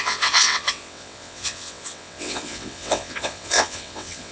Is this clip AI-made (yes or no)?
yes